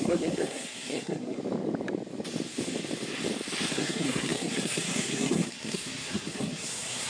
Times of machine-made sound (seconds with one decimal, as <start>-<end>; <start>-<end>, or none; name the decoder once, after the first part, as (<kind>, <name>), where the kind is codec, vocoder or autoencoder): 0.0-1.4 (codec, SNAC); 3.7-7.1